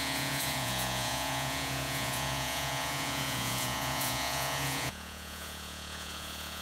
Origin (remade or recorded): remade